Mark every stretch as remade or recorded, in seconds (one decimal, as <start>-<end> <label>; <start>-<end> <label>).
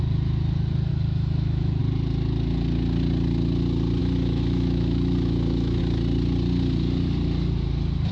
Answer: 0.0-0.9 recorded; 0.9-1.8 remade; 1.8-4.0 recorded; 4.0-5.8 remade; 5.8-8.1 recorded